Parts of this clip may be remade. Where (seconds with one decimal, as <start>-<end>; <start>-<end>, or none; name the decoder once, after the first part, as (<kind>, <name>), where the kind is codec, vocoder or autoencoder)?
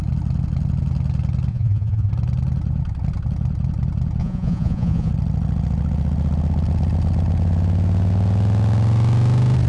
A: 1.5-2.1 (vocoder, Vocos); 4.2-5.1